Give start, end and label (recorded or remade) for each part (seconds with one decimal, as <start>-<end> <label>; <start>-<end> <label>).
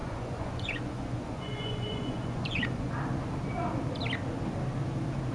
0.0-2.9 remade; 2.9-5.3 recorded